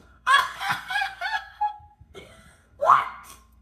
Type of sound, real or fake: fake